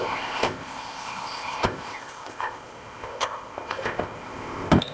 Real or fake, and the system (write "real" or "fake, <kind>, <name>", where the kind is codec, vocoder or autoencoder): fake, codec, ZipCodec